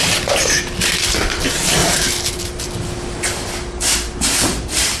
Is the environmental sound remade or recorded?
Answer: recorded